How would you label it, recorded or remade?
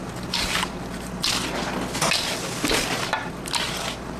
recorded